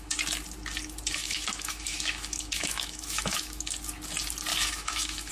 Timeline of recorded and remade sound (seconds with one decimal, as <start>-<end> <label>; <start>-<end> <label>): 0.0-1.2 recorded; 1.2-3.7 remade; 3.7-4.5 recorded; 4.5-5.3 remade